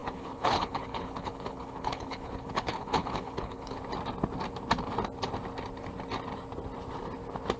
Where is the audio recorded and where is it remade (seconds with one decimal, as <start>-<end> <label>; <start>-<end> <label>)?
0.0-3.8 remade; 3.8-7.6 recorded